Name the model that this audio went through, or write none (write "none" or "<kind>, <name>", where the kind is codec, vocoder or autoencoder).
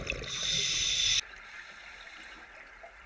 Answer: none